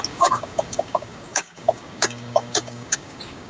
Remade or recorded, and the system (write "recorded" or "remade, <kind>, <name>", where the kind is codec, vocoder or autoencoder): remade, codec, DAC